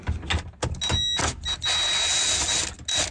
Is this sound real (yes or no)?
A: yes